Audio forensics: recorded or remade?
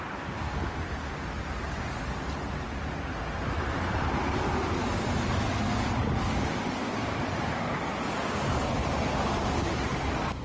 recorded